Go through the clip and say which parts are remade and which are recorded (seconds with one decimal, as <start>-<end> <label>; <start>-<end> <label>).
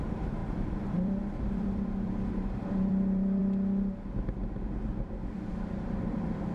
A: 0.0-3.4 remade; 3.4-5.5 recorded; 5.5-6.5 remade